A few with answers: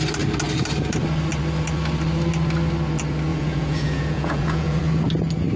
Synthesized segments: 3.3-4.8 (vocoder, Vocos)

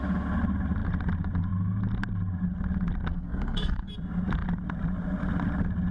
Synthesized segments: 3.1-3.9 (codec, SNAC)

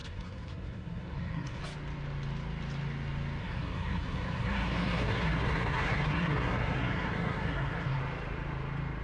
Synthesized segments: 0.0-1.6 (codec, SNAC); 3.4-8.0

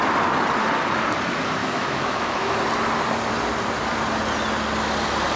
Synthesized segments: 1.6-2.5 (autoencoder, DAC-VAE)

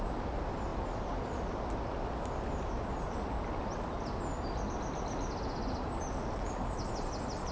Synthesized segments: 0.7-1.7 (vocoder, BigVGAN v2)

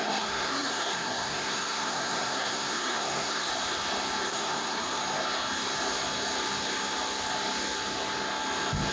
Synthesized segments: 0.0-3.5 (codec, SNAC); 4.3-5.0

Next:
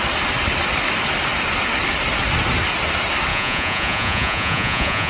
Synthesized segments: 3.3-5.1 (vocoder, Vocos)